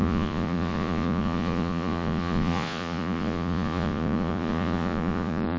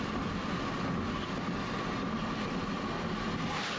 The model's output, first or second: first